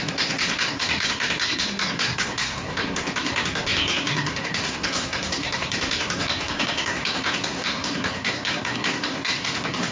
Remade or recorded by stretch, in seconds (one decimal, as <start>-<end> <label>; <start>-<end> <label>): 0.0-9.9 remade